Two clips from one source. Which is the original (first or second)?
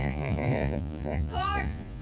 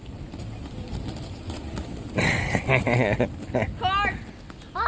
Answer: second